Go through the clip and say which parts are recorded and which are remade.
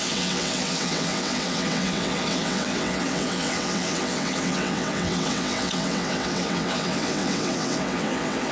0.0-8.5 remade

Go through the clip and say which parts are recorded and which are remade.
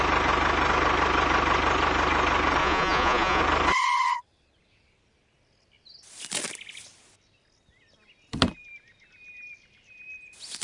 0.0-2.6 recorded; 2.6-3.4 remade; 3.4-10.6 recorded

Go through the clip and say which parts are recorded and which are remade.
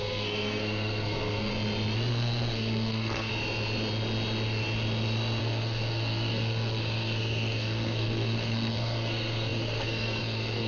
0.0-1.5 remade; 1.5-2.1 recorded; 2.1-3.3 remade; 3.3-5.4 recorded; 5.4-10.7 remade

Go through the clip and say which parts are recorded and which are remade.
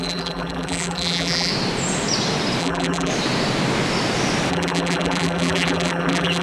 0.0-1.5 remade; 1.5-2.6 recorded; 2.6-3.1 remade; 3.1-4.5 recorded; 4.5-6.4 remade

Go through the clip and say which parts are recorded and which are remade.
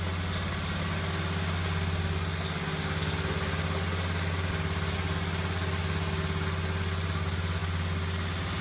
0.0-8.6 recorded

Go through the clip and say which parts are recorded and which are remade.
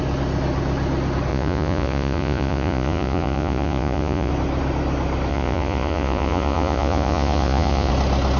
0.0-1.3 recorded; 1.3-4.3 remade; 4.3-5.3 recorded; 5.3-7.9 remade; 7.9-8.4 recorded